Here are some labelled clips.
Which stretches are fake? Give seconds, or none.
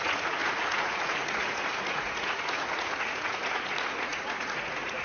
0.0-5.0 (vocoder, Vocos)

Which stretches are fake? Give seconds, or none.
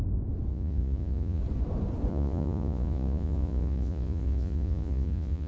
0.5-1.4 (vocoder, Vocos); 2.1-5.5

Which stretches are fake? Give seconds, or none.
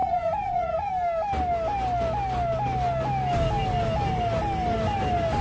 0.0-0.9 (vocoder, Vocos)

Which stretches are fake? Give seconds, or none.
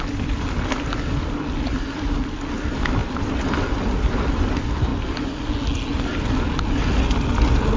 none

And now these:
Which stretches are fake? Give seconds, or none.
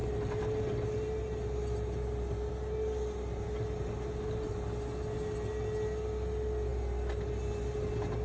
none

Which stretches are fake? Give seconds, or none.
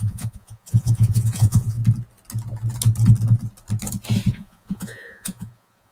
0.0-1.8 (vocoder, Vocos); 4.3-5.9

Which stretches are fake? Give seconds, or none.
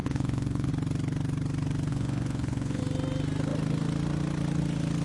0.0-0.7 (vocoder, Vocos); 1.9-2.8